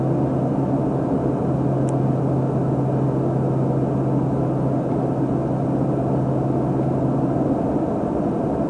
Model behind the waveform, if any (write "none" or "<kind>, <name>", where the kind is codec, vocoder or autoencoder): none